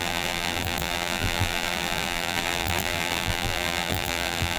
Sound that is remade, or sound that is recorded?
remade